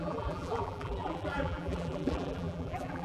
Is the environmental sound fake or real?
fake